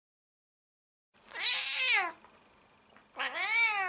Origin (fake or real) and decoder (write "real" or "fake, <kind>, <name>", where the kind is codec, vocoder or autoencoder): real